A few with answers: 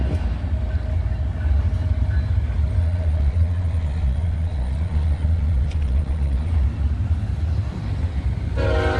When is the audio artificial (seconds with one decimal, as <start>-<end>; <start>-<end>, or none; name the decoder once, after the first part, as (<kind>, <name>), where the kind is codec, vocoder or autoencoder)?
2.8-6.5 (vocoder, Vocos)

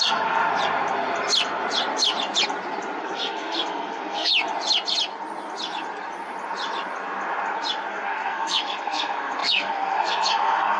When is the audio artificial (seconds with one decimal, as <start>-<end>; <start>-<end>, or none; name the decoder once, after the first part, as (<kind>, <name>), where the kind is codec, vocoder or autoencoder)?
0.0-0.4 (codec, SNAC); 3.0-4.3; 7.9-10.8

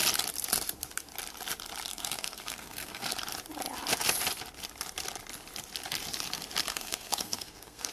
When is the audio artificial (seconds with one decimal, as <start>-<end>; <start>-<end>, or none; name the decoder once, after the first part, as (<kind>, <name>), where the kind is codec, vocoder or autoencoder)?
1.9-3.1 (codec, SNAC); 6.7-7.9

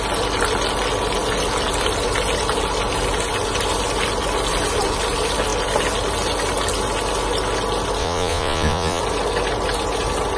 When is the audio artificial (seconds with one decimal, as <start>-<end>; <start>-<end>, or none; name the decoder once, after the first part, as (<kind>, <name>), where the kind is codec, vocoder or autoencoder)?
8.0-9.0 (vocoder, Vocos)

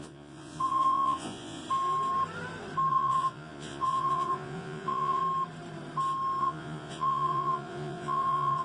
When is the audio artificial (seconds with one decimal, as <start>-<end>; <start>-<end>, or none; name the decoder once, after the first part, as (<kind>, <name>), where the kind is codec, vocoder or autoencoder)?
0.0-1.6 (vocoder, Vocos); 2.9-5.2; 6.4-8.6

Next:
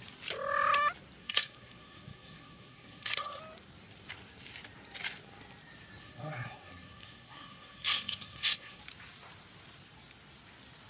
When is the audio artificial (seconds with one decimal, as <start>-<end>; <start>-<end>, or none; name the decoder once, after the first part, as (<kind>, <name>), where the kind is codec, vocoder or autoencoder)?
1.2-3.4 (codec, SNAC); 6.0-8.8

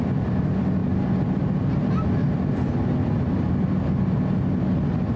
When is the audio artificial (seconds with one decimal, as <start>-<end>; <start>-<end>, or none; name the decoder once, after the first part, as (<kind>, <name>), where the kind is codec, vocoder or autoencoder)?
none

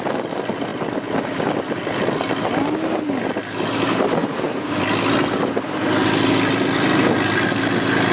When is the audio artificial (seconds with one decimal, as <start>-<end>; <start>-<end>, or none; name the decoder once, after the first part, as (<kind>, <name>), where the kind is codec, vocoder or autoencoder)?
4.2-4.7 (vocoder, BigVGAN v2)